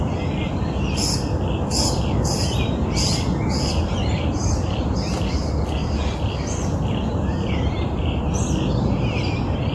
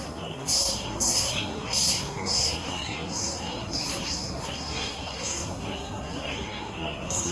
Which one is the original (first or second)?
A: first